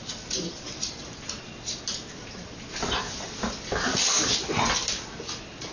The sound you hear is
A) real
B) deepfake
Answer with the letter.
A